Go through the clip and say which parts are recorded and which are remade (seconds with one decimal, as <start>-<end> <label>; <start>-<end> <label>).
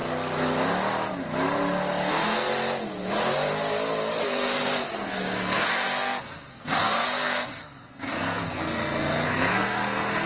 0.0-2.1 recorded; 2.1-2.5 remade; 2.5-4.2 recorded; 4.2-10.3 remade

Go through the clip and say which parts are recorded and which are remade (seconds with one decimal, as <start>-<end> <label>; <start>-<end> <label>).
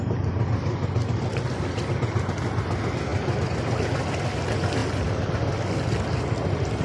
0.0-6.8 recorded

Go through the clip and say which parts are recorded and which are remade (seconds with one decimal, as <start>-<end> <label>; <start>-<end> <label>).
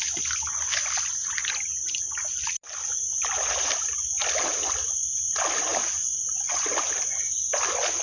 0.0-8.0 recorded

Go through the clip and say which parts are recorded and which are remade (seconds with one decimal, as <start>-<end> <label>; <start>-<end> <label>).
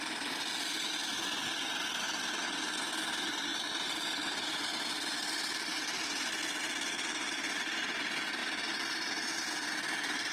0.0-10.3 recorded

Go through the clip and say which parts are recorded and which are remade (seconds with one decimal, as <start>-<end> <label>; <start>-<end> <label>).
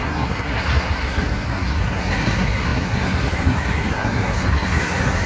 0.0-5.3 remade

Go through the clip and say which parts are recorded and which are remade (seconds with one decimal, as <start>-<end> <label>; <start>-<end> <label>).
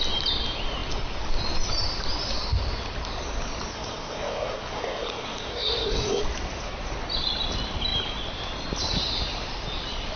0.0-3.7 recorded; 3.7-6.2 remade; 6.2-10.2 recorded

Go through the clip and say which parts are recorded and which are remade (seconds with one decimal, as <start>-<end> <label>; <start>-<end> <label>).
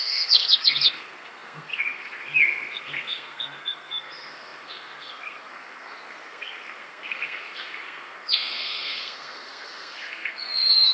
0.0-10.9 remade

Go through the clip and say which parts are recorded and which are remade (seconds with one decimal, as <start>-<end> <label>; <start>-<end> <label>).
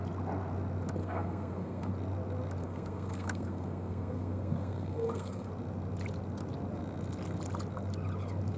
0.0-1.0 recorded; 1.0-1.9 remade; 1.9-2.6 recorded; 2.6-5.5 remade; 5.5-8.6 recorded